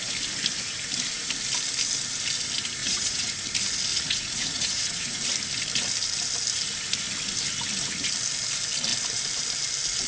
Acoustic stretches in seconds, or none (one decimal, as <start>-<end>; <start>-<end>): 0.0-2.8; 3.3-3.9; 5.2-10.1